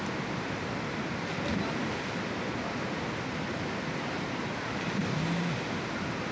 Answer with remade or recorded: recorded